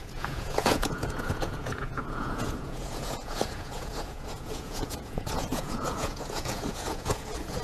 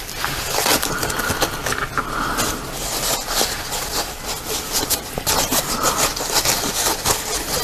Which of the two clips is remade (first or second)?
first